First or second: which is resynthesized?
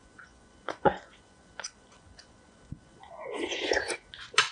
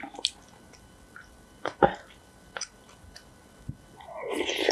first